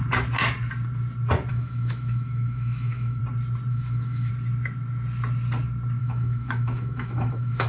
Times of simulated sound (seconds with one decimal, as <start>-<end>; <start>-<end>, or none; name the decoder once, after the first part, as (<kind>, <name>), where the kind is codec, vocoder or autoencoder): 1.5-3.2 (autoencoder, DAC-VAE); 3.7-4.3; 6.0-7.7